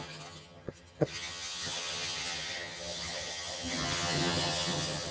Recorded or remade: remade